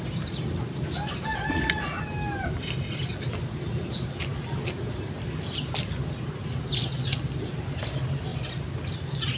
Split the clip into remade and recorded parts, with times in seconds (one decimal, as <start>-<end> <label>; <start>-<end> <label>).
0.0-9.4 recorded